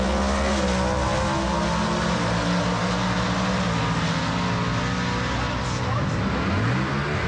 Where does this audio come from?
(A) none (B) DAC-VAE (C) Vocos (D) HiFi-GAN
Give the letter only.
A